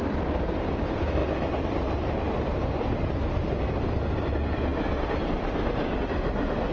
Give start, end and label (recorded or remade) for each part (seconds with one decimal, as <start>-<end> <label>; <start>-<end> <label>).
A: 0.0-6.7 recorded